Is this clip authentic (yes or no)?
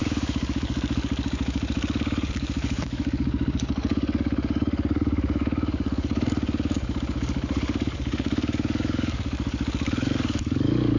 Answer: no